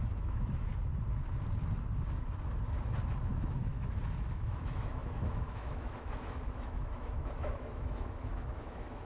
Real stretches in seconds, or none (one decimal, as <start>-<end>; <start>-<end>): 0.7-3.2; 3.7-4.3